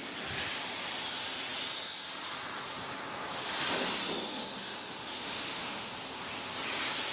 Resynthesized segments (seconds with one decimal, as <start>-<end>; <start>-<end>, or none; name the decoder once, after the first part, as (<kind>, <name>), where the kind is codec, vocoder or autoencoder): 4.3-5.9 (autoencoder, DAC-VAE)